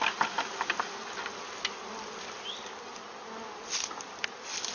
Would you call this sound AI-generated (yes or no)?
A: no